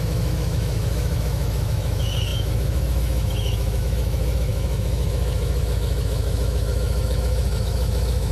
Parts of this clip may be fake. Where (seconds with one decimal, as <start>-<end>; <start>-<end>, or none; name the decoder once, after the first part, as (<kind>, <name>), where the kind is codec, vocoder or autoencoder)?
0.0-8.3 (autoencoder, DAC-VAE)